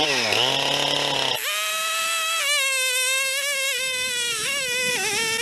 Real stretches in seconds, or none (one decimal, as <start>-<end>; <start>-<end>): 0.0-1.7; 4.9-5.4